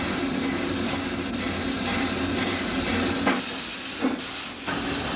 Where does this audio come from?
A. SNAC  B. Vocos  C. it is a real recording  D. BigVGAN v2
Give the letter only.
C